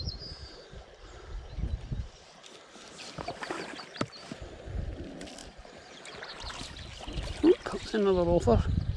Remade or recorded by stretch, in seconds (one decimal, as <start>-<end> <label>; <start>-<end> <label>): 0.0-5.4 recorded; 5.4-6.2 remade; 6.2-9.0 recorded